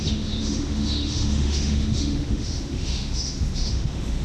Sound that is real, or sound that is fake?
fake